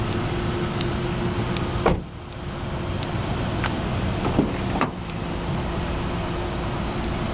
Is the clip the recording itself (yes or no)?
yes